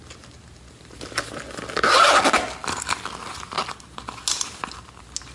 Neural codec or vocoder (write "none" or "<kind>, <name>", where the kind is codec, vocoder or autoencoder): none